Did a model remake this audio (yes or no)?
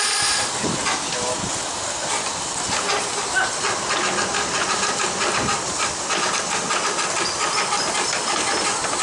no